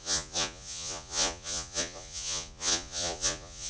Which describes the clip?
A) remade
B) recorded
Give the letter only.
A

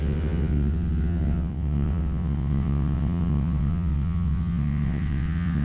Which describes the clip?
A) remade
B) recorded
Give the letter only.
A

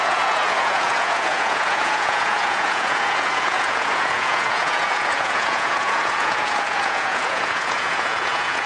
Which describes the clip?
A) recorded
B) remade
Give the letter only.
B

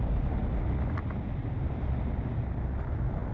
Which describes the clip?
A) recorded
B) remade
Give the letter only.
A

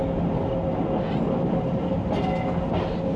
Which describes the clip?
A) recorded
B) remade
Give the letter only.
A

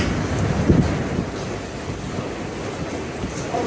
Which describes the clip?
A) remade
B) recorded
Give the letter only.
B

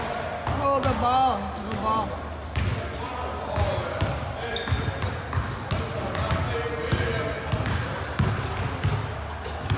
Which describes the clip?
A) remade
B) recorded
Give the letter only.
B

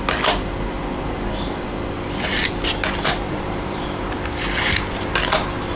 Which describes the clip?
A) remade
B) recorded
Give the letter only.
B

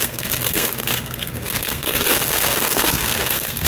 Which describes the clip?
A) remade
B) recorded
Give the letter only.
A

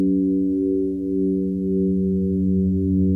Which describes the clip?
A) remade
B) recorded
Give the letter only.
B